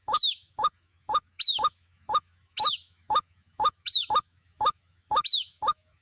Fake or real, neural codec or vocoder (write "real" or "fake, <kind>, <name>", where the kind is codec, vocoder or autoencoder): fake, autoencoder, DAC-VAE